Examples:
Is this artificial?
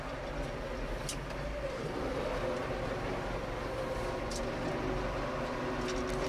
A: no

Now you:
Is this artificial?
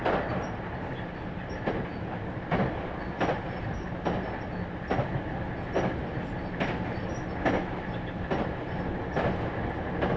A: no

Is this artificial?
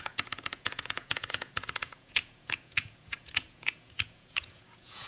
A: yes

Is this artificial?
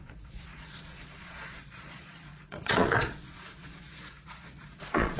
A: yes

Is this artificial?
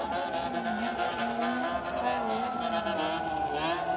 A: no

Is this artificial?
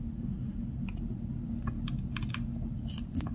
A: no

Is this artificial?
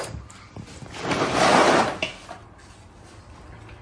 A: no